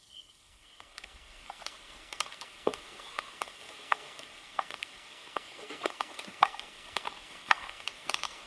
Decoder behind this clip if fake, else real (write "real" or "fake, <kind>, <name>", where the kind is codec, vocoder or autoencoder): fake, codec, SNAC